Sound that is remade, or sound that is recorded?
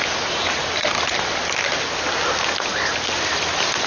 recorded